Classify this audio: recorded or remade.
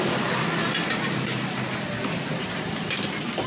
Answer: recorded